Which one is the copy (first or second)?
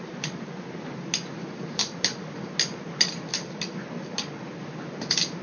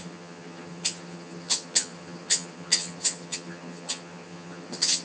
second